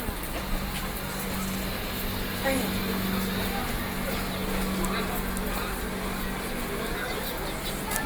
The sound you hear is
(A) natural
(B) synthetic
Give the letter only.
A